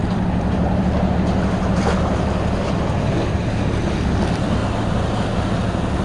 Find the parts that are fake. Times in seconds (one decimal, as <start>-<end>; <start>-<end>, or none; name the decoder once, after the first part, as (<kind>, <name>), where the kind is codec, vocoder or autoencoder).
4.6-5.5 (vocoder, BigVGAN v2)